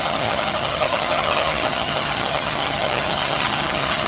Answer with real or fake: fake